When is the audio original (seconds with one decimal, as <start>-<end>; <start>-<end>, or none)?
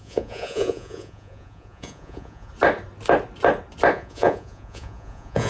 2.5-3.9